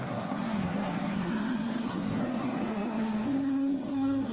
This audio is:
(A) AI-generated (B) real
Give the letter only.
A